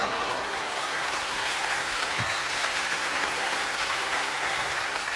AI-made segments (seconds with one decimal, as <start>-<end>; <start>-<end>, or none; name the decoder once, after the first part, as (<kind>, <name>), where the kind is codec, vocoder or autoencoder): 0.0-5.2 (codec, SNAC)